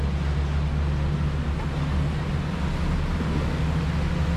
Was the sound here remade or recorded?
recorded